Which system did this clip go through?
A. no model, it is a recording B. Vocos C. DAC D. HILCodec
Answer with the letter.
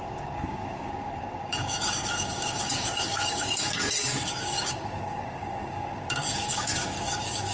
C